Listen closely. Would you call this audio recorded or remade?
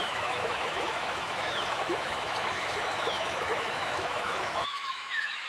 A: remade